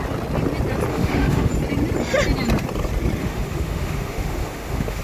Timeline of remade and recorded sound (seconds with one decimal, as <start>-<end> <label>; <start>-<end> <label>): 0.0-0.9 recorded; 0.9-1.5 remade; 1.5-3.2 recorded; 3.2-5.0 remade